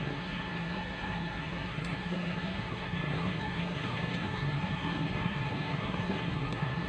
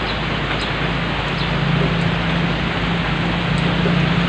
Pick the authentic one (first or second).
second